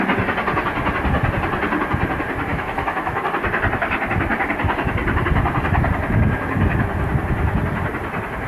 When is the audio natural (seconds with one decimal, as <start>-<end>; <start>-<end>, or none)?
0.0-2.5; 3.2-8.5